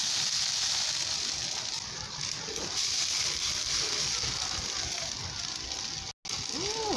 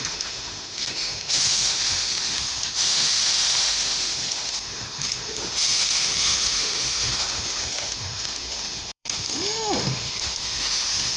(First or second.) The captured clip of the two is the first